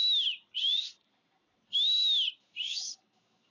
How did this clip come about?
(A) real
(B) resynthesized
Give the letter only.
A